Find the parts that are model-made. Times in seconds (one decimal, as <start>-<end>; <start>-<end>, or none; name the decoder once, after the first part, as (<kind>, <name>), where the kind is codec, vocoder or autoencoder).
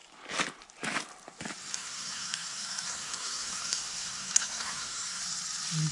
1.7-5.2 (codec, SNAC)